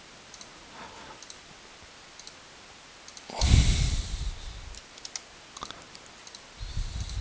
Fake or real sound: real